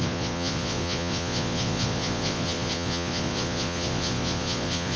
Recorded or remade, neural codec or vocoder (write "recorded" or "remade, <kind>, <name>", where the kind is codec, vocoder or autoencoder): remade, vocoder, Vocos